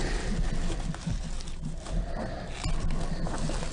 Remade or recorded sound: recorded